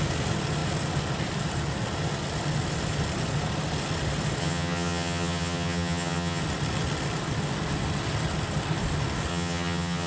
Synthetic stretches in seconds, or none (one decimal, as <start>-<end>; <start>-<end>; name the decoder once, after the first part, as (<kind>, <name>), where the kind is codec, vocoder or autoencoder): 4.4-6.4 (vocoder, HiFi-GAN); 9.3-10.1